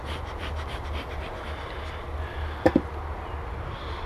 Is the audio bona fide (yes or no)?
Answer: yes